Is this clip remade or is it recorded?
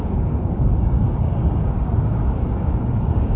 remade